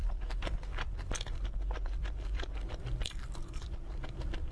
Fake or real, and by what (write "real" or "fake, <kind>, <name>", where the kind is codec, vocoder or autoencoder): fake, vocoder, BigVGAN v2